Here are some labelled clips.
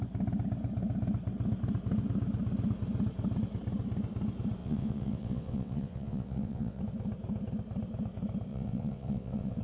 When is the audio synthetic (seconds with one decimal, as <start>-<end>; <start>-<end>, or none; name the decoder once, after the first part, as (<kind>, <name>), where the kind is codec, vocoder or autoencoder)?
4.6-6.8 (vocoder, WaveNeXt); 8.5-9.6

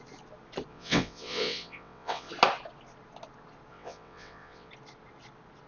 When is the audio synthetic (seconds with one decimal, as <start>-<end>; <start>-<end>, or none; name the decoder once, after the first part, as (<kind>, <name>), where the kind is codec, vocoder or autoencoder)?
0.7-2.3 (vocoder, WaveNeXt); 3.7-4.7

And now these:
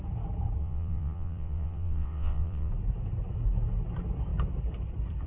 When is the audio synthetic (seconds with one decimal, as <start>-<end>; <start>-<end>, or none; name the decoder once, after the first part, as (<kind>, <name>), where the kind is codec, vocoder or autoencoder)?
0.6-2.7 (vocoder, WaveNeXt)

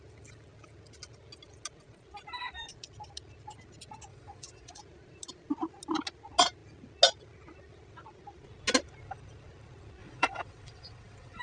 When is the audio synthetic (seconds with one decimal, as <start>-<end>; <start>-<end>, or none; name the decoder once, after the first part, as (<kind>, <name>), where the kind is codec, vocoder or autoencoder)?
4.1-4.8 (vocoder, WaveNeXt); 10.0-11.4

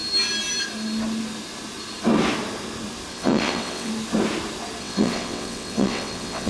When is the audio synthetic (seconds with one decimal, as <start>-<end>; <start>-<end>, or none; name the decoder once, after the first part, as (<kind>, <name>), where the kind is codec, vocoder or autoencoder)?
3.1-3.9 (vocoder, WaveNeXt); 4.8-6.5